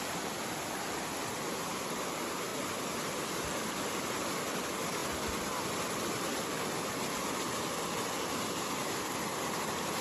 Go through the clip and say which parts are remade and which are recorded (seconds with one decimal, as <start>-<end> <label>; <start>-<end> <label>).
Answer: 0.0-10.0 recorded

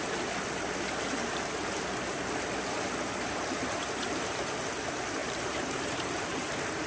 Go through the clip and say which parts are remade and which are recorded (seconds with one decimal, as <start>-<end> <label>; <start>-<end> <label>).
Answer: 0.0-3.6 recorded; 3.6-4.4 remade; 4.4-5.2 recorded; 5.2-6.9 remade